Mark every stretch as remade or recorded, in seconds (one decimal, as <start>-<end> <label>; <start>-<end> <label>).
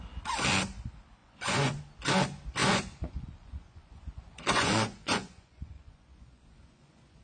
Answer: 0.0-1.2 recorded; 1.2-1.8 remade; 1.8-2.6 recorded; 2.6-7.2 remade